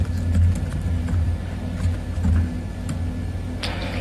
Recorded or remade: recorded